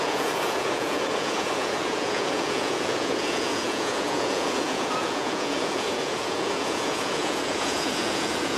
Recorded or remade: remade